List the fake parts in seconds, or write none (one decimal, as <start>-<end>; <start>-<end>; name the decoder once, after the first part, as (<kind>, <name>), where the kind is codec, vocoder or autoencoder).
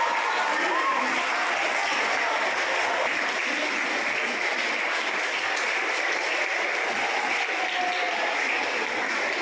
none